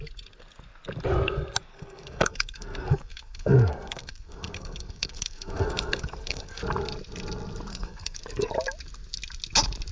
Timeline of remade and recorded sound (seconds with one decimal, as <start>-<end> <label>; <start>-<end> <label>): 0.0-1.7 recorded; 1.7-6.6 remade; 6.6-7.7 recorded; 7.7-8.5 remade; 8.5-9.9 recorded